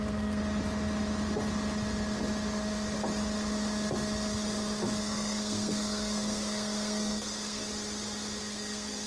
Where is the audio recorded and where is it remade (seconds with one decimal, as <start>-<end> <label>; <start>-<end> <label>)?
0.0-0.4 remade; 0.4-5.0 recorded; 5.0-7.6 remade; 7.6-8.4 recorded; 8.4-9.1 remade